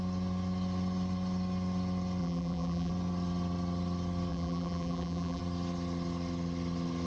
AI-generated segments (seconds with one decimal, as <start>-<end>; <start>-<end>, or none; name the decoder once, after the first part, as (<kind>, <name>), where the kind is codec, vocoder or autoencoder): 2.2-2.9 (vocoder, BigVGAN v2); 4.3-5.4